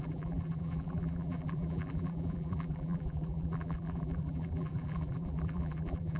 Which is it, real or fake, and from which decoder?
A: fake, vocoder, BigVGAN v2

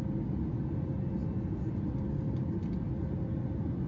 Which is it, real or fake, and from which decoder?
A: real